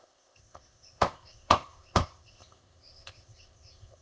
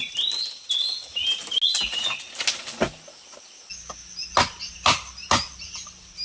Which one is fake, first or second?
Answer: first